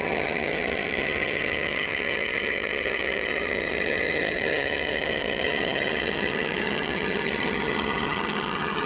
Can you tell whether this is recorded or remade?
remade